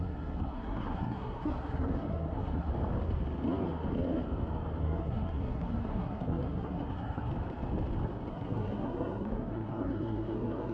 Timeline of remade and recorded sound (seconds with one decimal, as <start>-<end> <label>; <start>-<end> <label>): 0.0-2.7 remade; 2.7-4.8 recorded; 4.8-7.3 remade; 7.3-8.3 recorded; 8.3-10.7 remade